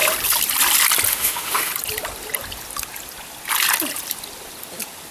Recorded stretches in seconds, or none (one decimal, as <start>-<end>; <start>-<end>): 0.0-1.1; 1.7-5.1